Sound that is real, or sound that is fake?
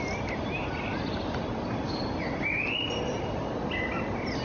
real